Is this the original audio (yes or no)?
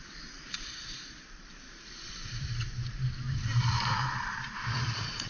no